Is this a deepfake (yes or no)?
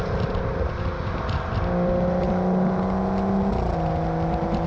no